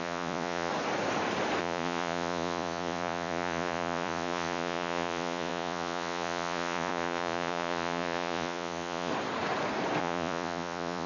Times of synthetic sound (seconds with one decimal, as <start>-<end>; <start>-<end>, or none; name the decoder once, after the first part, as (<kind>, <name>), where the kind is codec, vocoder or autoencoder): 0.0-0.7 (vocoder, Vocos); 1.6-9.1; 10.0-11.1